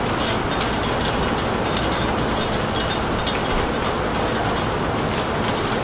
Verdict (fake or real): real